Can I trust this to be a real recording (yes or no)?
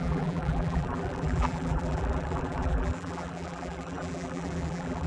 no